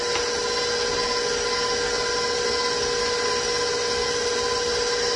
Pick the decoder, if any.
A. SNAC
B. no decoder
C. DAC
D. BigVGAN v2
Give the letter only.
B